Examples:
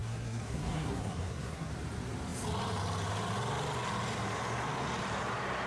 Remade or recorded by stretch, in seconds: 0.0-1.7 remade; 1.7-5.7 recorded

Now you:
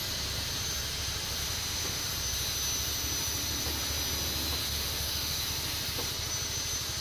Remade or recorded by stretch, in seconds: 0.0-1.4 recorded; 1.4-2.1 remade; 2.1-4.6 recorded; 4.6-5.4 remade; 5.4-7.0 recorded

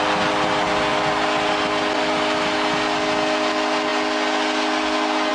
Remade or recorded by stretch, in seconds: 0.0-5.3 recorded

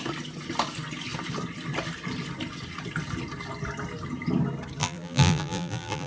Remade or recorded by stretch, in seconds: 0.0-4.8 recorded; 4.8-6.1 remade

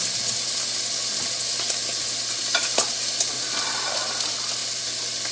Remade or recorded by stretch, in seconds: 0.0-5.3 recorded

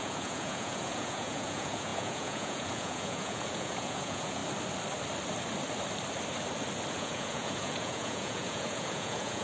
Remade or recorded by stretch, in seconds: 0.0-4.4 remade; 4.4-6.9 recorded; 6.9-9.4 remade

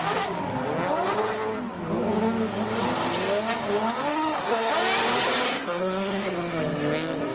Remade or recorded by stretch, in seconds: 0.0-4.1 recorded; 4.1-4.7 remade; 4.7-5.4 recorded; 5.4-6.6 remade; 6.6-7.3 recorded